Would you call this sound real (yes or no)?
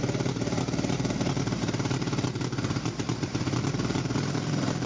no